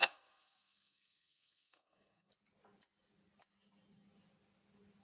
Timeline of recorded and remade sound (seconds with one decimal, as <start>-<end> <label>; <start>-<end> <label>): 0.0-2.3 remade; 2.3-5.0 recorded